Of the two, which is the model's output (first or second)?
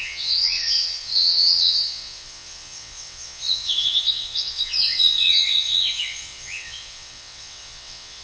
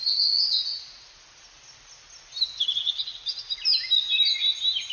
first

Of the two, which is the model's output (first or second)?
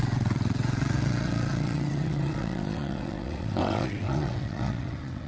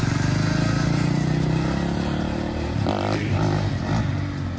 first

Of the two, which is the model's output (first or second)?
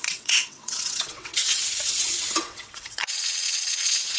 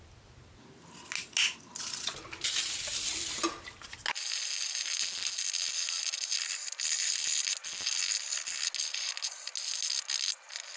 first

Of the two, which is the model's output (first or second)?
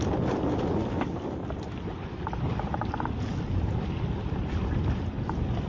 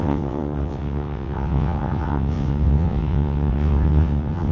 second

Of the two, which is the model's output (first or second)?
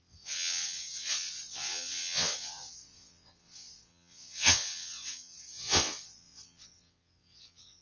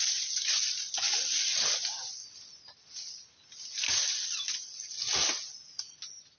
first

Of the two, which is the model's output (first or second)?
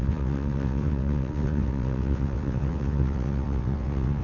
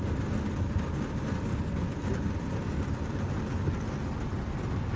first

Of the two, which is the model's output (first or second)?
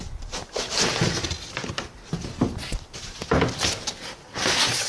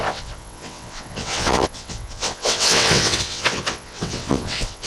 second